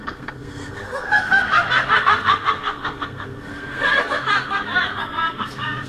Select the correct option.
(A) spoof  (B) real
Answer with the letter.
A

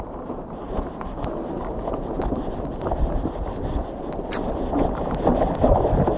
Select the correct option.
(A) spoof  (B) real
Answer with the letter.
B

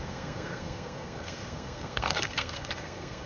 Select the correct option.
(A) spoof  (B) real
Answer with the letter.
A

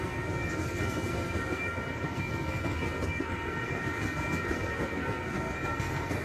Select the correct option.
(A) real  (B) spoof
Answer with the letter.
B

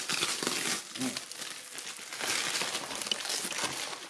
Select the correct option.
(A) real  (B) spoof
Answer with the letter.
A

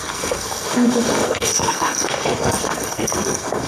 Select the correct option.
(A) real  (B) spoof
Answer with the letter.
B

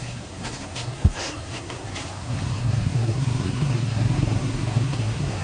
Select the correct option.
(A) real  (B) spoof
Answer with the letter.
B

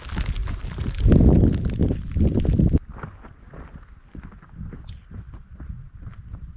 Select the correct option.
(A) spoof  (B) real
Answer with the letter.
B